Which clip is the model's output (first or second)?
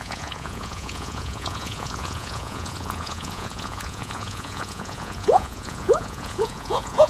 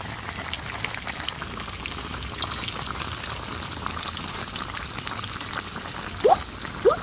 first